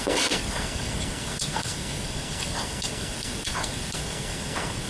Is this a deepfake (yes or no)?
yes